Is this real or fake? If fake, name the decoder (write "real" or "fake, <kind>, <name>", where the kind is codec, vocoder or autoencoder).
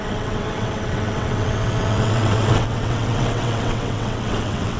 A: fake, vocoder, WaveNeXt